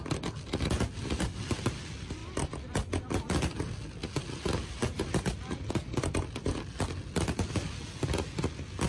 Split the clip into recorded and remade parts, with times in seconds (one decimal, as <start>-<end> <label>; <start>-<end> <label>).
0.0-8.9 recorded